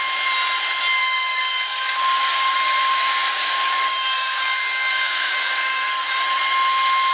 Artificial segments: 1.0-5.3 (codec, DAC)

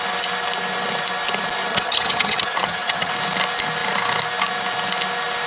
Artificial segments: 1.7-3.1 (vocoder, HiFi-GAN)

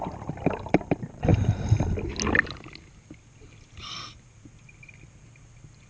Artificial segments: 0.0-1.3 (vocoder, BigVGAN v2); 4.8-5.9

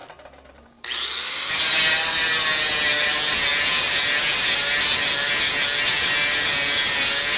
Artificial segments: none